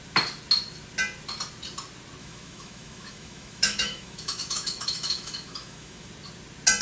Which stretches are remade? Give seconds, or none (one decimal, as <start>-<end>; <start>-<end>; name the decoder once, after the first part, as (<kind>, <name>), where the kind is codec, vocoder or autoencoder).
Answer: 2.2-6.1 (autoencoder, DAC-VAE)